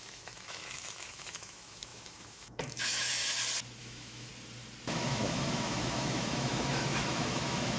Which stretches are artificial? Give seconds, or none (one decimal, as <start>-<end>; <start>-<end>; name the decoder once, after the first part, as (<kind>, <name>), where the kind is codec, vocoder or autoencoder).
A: 0.0-3.2 (autoencoder, DAC-VAE); 3.8-4.3; 4.9-7.8